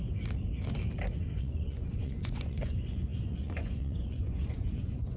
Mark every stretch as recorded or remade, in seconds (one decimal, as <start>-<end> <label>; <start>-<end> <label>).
0.0-1.4 recorded; 1.4-5.2 remade